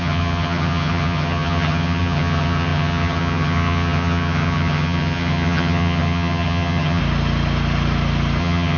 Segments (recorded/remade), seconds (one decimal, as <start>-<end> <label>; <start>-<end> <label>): 0.0-7.0 remade; 7.0-8.4 recorded; 8.4-8.8 remade